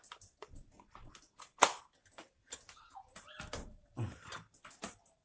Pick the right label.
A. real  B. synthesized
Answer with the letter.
A